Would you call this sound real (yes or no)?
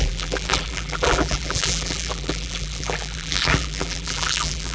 no